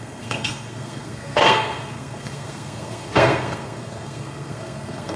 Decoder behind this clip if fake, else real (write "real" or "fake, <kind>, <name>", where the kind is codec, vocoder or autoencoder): fake, codec, SNAC